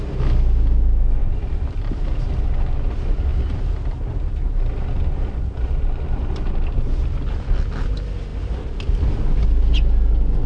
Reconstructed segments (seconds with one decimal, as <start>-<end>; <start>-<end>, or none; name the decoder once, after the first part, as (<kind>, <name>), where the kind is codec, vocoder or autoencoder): none